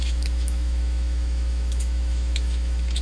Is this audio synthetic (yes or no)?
yes